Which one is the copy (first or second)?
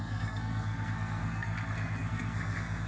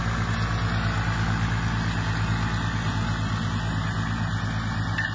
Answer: first